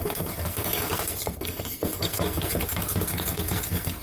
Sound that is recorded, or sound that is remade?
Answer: remade